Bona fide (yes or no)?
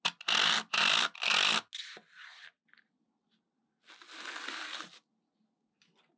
yes